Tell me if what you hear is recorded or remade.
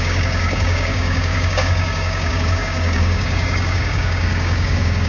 remade